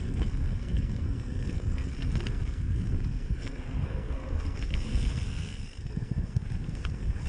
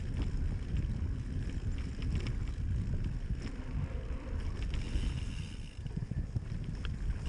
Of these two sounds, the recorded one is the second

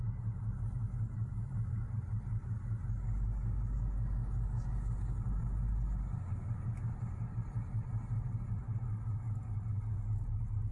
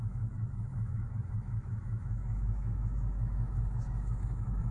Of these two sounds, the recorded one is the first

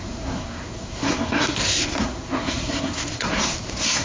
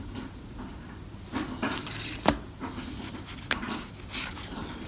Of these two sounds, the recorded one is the second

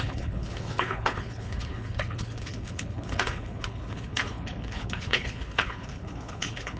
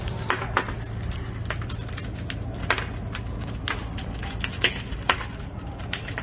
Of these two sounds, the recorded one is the second